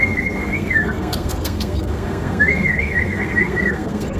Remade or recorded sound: remade